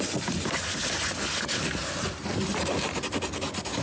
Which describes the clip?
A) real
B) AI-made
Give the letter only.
A